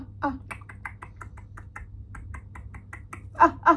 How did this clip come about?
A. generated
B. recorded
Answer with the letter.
B